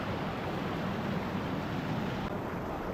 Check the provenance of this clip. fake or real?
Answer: real